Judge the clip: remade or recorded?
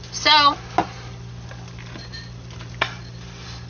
recorded